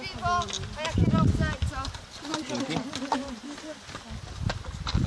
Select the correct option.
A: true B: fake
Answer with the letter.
A